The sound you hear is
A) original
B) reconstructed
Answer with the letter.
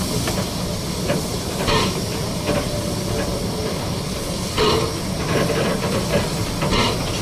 A